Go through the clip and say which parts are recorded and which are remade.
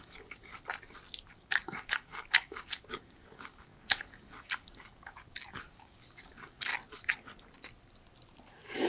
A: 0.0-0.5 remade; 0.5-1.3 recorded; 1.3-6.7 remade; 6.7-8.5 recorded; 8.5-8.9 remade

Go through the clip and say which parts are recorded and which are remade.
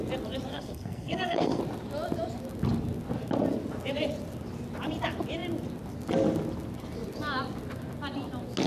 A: 0.0-0.5 recorded; 0.5-1.6 remade; 1.6-8.7 recorded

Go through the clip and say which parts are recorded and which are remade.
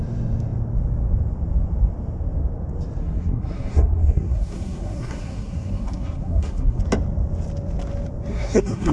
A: 0.0-3.0 recorded; 3.0-6.8 remade; 6.8-8.3 recorded; 8.3-8.9 remade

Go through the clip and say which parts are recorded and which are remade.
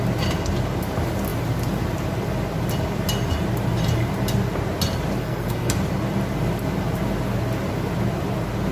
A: 0.0-5.2 recorded; 5.2-5.8 remade; 5.8-8.7 recorded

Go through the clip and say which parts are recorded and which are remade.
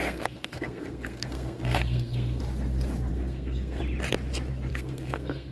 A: 0.0-2.4 remade; 2.4-3.1 recorded; 3.1-3.8 remade; 3.8-4.7 recorded; 4.7-5.5 remade